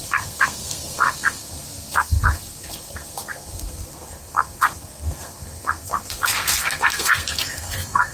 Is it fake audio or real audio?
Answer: fake